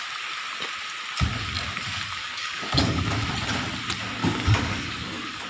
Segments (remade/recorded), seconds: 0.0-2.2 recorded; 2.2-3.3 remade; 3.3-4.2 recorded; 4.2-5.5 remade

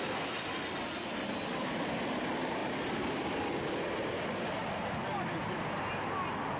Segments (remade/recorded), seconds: 0.0-6.6 recorded

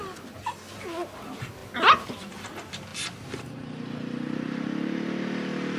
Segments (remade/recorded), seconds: 0.0-2.9 recorded; 2.9-3.8 remade; 3.8-5.8 recorded

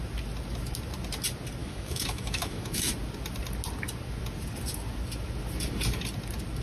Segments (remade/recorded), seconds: 0.0-1.6 recorded; 1.6-2.9 remade; 2.9-6.6 recorded

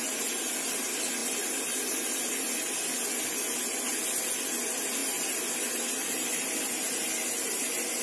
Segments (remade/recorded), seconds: 0.0-5.0 recorded; 5.0-5.5 remade; 5.5-8.0 recorded

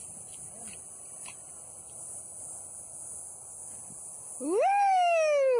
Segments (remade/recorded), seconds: 0.0-5.6 recorded

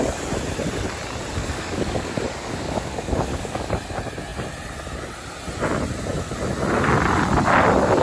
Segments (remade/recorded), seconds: 0.0-1.4 recorded; 1.4-3.7 remade; 3.7-8.0 recorded